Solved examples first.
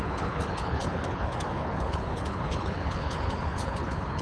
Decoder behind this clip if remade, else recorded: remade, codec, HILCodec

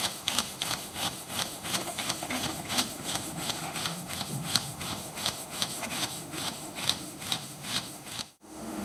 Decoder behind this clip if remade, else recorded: remade, autoencoder, DAC-VAE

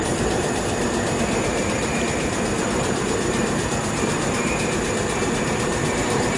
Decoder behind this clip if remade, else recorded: remade, vocoder, BigVGAN v2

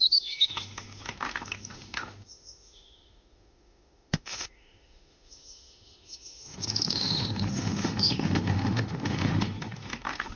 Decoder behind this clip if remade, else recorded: remade, autoencoder, DAC-VAE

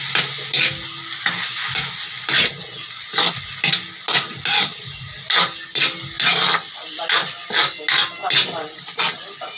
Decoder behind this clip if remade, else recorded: recorded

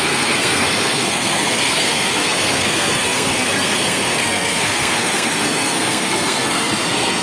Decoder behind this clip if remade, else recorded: remade, codec, SNAC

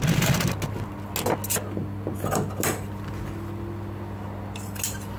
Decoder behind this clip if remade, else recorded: recorded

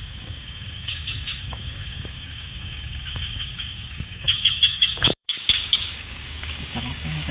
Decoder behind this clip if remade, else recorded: remade, codec, DAC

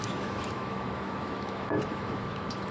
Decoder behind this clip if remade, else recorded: remade, autoencoder, DAC-VAE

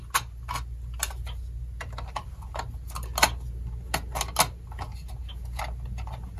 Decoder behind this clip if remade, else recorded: recorded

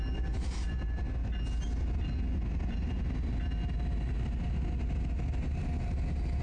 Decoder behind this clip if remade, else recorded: recorded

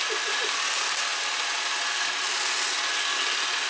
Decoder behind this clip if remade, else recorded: recorded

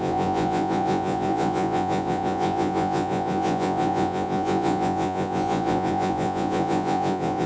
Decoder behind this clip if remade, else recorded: remade, vocoder, Vocos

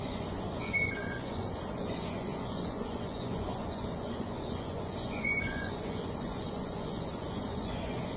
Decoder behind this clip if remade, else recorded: remade, vocoder, Vocos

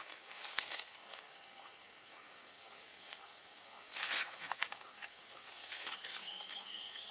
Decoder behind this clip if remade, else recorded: remade, codec, SNAC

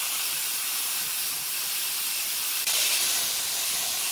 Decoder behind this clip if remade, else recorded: recorded